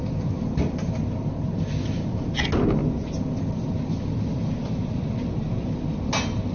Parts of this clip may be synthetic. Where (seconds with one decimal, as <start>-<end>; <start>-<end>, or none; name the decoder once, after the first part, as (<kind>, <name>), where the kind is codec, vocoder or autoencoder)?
none